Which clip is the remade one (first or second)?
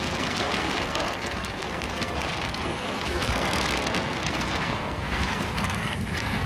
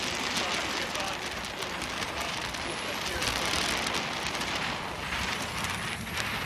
first